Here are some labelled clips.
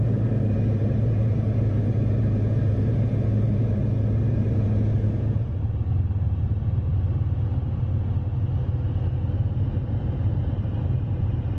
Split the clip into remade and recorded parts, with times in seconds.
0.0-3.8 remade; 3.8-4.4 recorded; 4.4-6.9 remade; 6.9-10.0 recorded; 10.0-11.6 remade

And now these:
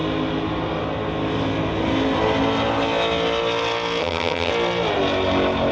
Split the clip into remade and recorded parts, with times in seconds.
0.0-4.0 recorded; 4.0-4.5 remade; 4.5-5.7 recorded

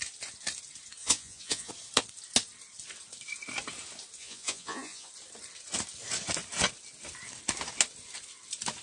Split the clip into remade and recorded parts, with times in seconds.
0.0-1.0 recorded; 1.0-1.7 remade; 1.7-4.2 recorded; 4.2-5.1 remade; 5.1-8.8 recorded

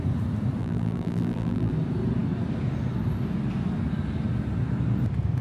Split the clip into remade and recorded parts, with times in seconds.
0.0-0.6 recorded; 0.6-1.7 remade; 1.7-5.4 recorded

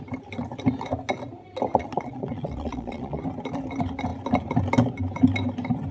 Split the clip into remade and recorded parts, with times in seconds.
0.0-1.7 recorded; 1.7-3.2 remade; 3.2-5.9 recorded

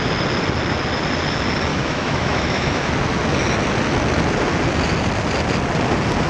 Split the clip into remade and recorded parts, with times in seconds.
0.0-1.7 recorded; 1.7-2.9 remade; 2.9-6.3 recorded

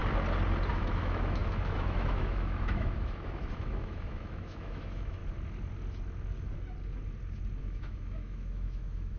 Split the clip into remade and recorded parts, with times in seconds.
0.0-0.7 recorded; 0.7-5.2 remade; 5.2-7.6 recorded; 7.6-9.2 remade